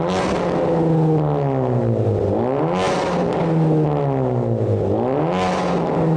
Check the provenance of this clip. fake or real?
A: real